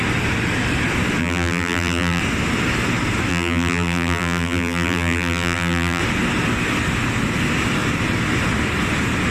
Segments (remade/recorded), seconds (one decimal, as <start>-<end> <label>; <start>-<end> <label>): 0.0-1.2 recorded; 1.2-2.2 remade; 2.2-3.3 recorded; 3.3-6.0 remade; 6.0-9.3 recorded